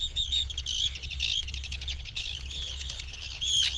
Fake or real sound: fake